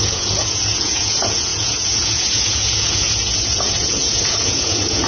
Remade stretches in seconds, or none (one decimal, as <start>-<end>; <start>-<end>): 0.0-5.1